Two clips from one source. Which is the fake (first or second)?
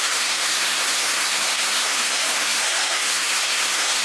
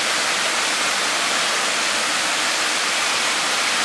first